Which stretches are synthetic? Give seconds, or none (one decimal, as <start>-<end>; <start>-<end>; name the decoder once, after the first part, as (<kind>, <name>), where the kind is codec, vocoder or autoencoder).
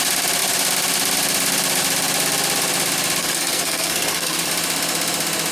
3.2-4.5 (codec, SNAC)